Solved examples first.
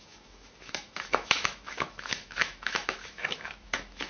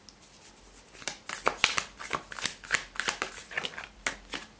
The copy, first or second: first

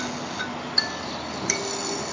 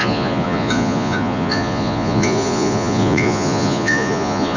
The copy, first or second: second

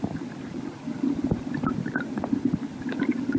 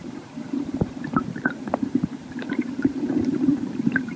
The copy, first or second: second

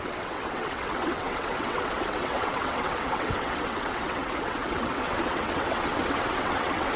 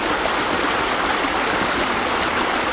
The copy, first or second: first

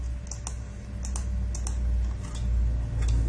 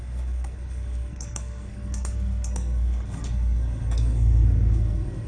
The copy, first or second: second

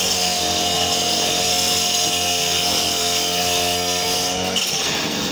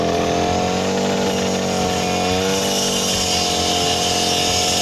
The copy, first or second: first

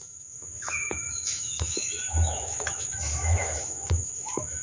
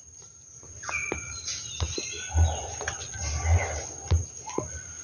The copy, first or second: first